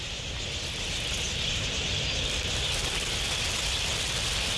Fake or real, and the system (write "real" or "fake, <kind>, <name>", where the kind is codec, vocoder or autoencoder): real